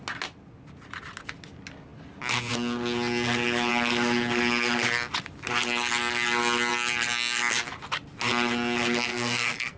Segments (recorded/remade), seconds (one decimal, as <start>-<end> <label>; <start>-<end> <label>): 0.0-9.1 recorded; 9.1-9.8 remade